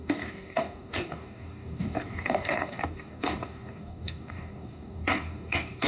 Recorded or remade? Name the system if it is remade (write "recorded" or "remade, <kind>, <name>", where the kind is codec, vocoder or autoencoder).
remade, codec, DAC